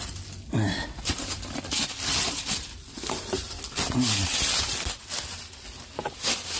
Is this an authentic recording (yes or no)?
yes